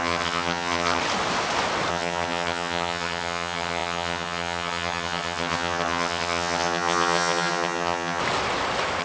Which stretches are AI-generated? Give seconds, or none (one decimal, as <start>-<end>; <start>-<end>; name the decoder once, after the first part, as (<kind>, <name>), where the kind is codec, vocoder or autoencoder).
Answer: 0.0-1.0 (vocoder, HiFi-GAN); 1.9-8.2